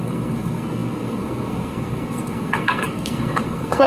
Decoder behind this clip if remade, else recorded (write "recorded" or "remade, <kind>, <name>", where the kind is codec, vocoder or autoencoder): remade, codec, SNAC